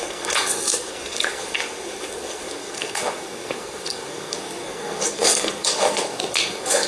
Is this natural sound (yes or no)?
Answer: no